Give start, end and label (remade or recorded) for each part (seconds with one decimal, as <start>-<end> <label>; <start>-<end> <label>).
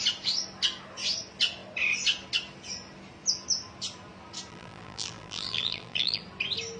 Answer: 0.0-4.5 recorded; 4.5-6.2 remade; 6.2-6.8 recorded